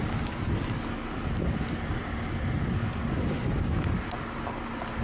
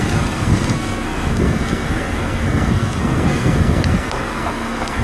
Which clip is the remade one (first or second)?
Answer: second